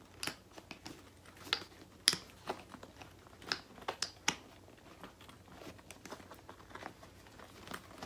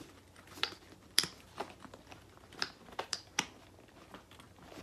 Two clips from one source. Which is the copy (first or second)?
second